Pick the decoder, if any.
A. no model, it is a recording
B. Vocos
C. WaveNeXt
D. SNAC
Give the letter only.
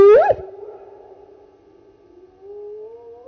A